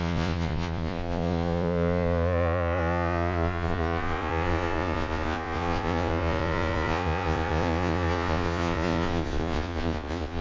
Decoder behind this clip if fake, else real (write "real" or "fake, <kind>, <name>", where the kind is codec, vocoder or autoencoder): fake, vocoder, Vocos